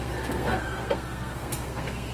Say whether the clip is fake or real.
fake